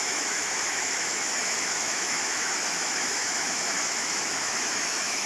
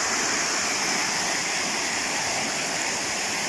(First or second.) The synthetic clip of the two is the first